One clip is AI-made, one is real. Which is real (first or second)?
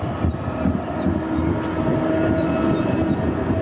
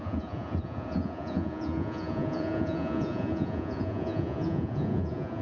first